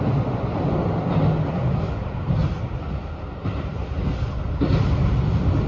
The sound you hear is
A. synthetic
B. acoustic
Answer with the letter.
B